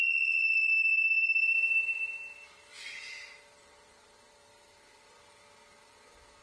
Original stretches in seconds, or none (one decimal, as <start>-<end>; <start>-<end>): 0.0-0.7; 4.5-6.4